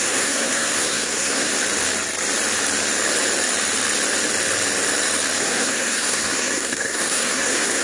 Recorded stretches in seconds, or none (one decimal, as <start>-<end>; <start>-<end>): 1.5-5.4